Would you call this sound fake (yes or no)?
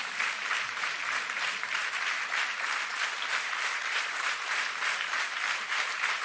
yes